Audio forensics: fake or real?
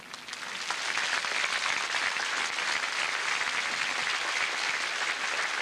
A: real